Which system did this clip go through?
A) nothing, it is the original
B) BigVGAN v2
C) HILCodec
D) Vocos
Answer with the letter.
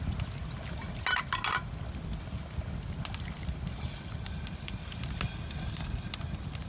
A